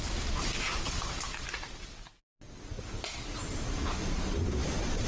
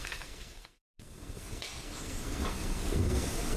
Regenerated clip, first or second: second